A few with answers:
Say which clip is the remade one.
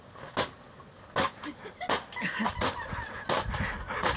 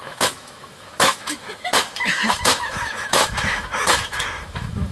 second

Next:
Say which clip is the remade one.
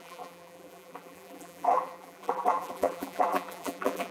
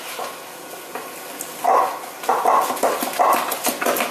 first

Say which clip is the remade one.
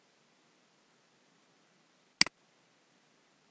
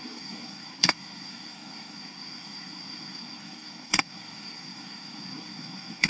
second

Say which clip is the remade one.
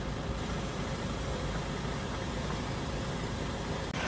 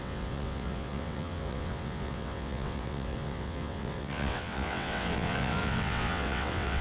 second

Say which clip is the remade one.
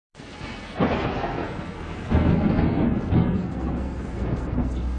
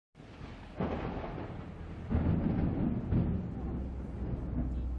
first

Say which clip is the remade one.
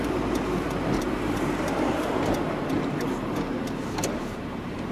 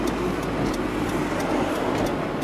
first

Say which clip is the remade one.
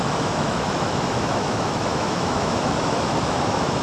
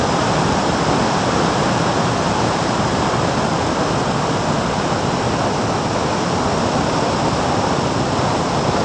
first